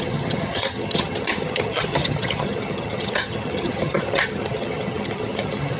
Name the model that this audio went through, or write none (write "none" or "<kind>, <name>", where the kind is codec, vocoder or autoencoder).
vocoder, HiFi-GAN